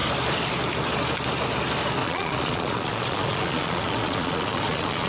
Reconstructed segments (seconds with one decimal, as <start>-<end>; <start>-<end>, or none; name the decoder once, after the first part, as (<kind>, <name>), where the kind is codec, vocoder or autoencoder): 2.0-5.1 (vocoder, Vocos)